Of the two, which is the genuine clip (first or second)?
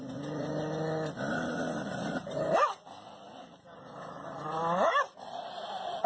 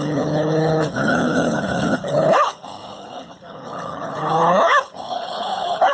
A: first